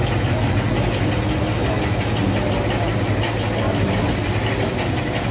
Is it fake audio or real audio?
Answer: real